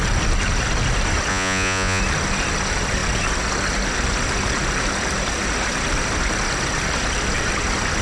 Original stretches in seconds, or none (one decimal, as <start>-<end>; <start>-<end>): 0.0-1.3; 2.0-8.0